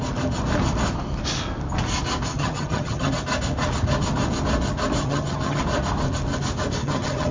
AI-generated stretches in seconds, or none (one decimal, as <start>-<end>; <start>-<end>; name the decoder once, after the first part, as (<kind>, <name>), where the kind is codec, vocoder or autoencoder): 2.3-3.1 (vocoder, HiFi-GAN); 5.0-5.6; 6.8-7.3